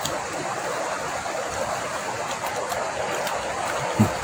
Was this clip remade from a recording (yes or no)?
no